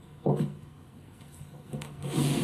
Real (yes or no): no